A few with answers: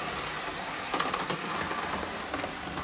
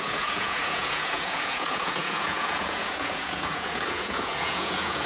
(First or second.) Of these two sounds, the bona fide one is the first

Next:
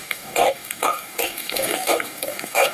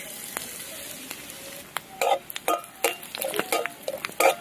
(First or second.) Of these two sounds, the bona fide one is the second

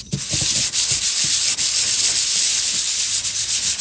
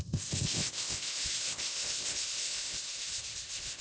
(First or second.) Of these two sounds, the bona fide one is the first